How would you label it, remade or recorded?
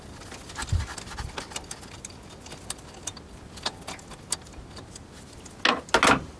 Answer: recorded